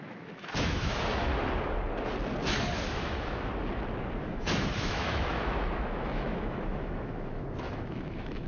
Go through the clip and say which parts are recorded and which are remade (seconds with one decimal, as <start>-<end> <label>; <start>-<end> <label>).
0.0-1.3 remade; 1.3-2.9 recorded; 2.9-3.5 remade; 3.5-4.2 recorded; 4.2-8.5 remade